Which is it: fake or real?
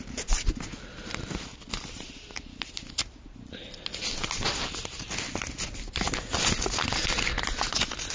real